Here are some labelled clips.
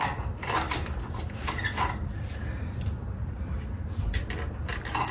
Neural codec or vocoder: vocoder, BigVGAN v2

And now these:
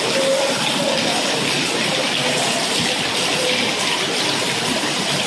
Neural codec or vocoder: none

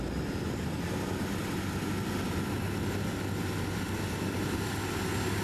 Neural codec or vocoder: none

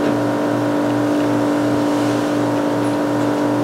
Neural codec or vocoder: none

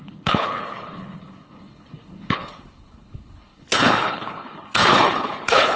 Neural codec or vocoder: codec, HILCodec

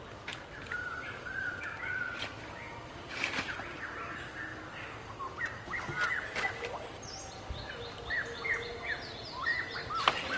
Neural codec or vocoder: none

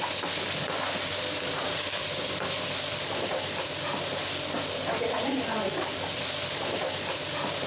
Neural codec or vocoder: none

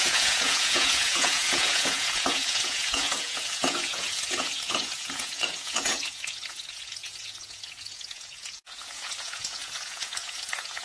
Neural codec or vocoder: vocoder, Vocos